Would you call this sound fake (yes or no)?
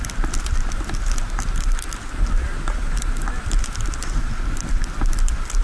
yes